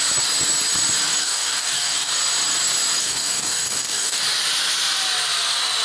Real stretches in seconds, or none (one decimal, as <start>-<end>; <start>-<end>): 0.0-1.2; 2.1-3.0; 4.2-5.8